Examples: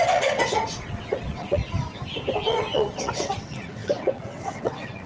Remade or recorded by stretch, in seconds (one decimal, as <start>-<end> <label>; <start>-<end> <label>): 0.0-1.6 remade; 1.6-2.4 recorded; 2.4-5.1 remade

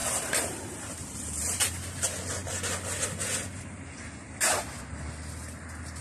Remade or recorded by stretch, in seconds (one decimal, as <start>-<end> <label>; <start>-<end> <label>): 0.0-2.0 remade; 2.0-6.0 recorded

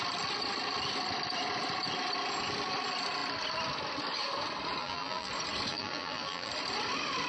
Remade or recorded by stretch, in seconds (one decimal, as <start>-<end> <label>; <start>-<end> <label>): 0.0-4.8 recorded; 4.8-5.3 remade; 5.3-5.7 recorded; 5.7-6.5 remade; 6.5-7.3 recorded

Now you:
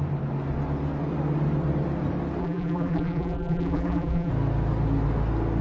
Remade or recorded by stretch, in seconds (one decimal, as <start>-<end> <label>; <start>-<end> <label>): 0.0-2.4 recorded; 2.4-4.3 remade; 4.3-5.6 recorded